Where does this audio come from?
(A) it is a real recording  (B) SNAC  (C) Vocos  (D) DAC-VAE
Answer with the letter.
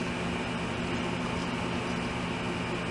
A